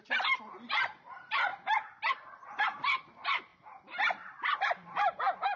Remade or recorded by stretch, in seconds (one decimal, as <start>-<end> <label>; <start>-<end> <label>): 0.0-1.5 remade; 1.5-2.1 recorded; 2.1-5.6 remade